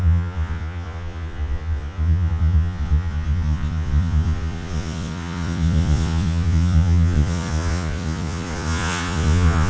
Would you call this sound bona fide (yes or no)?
no